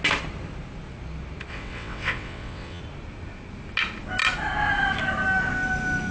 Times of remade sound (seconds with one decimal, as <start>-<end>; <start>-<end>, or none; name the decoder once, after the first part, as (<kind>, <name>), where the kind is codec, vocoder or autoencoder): 1.5-2.8 (vocoder, WaveNeXt)